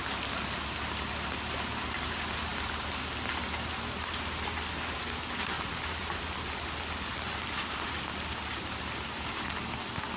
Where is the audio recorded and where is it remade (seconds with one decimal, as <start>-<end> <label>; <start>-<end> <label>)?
0.0-10.2 recorded